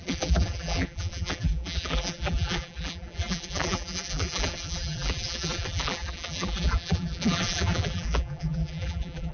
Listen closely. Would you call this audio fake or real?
fake